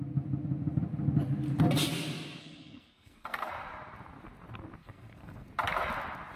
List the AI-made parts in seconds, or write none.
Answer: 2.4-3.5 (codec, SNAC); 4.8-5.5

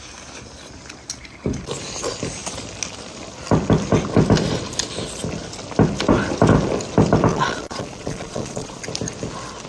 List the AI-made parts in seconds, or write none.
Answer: 7.3-8.8 (vocoder, Vocos)